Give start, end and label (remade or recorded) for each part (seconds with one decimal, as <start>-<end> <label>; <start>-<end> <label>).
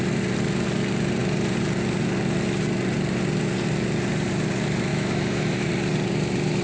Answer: 0.0-4.9 recorded; 4.9-5.7 remade; 5.7-6.6 recorded